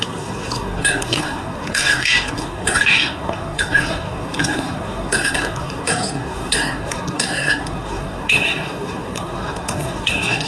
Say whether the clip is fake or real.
fake